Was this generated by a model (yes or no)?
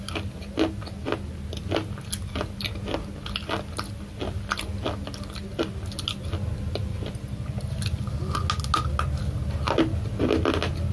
no